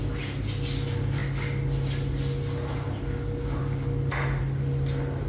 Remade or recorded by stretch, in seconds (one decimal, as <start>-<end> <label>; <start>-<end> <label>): 0.0-5.3 recorded